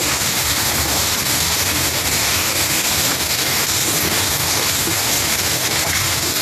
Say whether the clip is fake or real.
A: fake